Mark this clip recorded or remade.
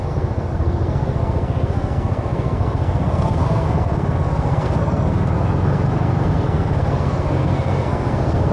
remade